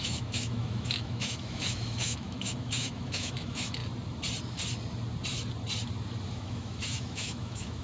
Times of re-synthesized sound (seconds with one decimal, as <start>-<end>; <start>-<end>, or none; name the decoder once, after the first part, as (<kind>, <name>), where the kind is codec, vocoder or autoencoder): 0.0-3.8 (autoencoder, DAC-VAE); 6.3-7.8